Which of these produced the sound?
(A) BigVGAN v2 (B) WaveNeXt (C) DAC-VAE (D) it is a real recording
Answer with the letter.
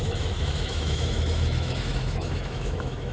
C